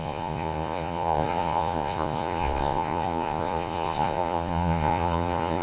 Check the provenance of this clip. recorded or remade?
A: remade